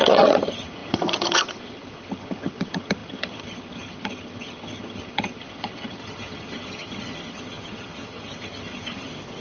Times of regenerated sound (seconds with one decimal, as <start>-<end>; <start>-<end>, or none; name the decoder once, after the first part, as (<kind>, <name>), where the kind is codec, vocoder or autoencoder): 0.0-9.4 (vocoder, HiFi-GAN)

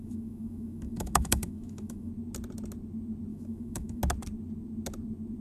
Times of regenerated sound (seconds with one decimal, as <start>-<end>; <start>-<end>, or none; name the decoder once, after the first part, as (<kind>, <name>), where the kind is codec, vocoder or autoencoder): 0.0-2.1 (autoencoder, DAC-VAE); 3.3-4.0

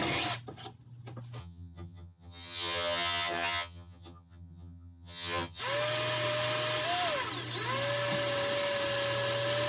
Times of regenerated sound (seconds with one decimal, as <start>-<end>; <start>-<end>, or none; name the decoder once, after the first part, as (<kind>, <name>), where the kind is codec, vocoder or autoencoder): 1.4-5.6 (vocoder, HiFi-GAN)

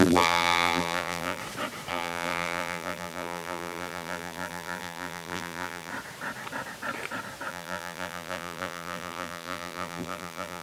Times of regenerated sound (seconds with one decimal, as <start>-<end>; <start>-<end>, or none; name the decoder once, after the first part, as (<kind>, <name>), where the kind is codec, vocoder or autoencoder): 0.0-1.4 (vocoder, BigVGAN v2); 1.9-5.9; 7.5-10.6

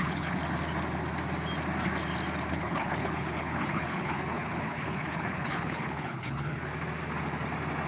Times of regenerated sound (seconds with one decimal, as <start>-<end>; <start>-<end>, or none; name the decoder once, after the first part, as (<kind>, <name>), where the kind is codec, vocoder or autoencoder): 0.0-0.4 (codec, HILCodec); 2.5-6.7

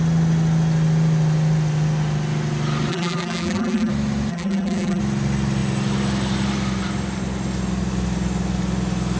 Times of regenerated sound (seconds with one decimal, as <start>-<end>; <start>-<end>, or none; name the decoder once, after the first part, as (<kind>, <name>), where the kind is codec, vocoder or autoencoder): 2.9-3.9 (vocoder, BigVGAN v2); 4.3-5.0